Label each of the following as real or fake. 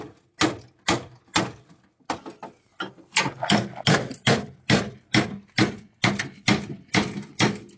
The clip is real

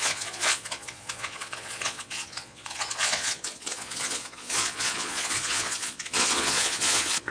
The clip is fake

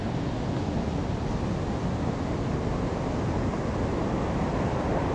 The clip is real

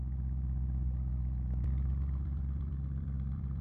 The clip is fake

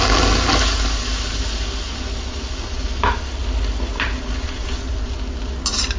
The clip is real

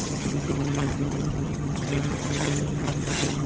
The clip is fake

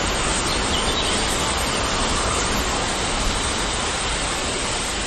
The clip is real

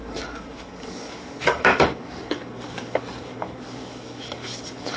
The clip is fake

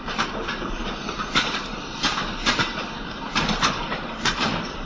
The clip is fake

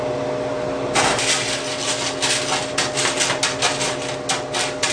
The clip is real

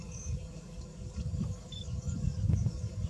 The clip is fake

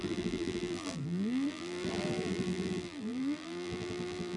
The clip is fake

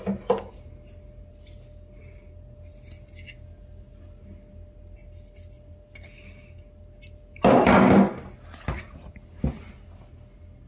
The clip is real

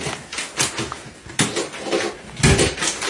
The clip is real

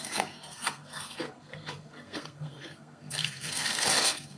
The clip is fake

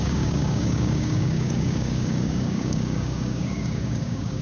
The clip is fake